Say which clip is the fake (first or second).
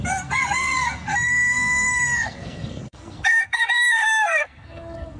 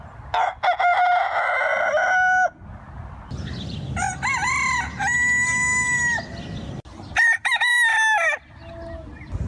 first